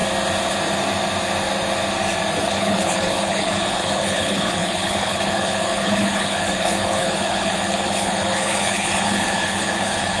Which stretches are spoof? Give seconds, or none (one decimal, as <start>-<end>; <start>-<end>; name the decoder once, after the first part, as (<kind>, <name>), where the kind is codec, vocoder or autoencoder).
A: 2.4-10.2 (codec, HILCodec)